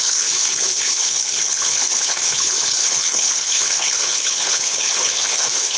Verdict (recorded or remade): remade